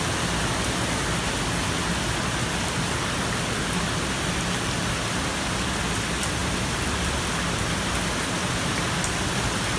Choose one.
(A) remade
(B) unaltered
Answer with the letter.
B